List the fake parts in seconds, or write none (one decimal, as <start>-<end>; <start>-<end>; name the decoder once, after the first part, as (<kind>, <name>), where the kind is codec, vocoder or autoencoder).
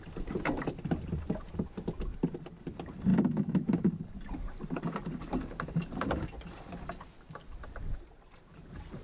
3.1-3.9 (autoencoder, DAC-VAE)